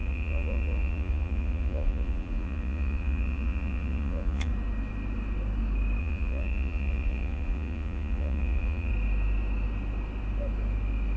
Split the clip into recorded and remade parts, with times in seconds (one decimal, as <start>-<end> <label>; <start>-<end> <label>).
0.0-4.5 remade; 4.5-6.0 recorded; 6.0-8.9 remade; 8.9-11.2 recorded